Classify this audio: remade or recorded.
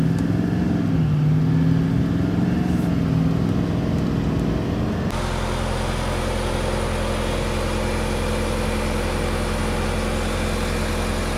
recorded